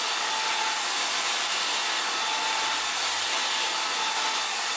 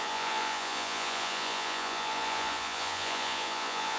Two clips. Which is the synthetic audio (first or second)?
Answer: second